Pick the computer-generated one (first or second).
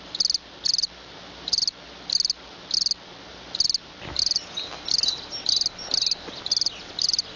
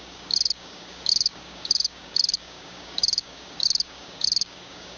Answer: second